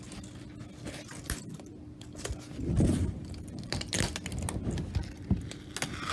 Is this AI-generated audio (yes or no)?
no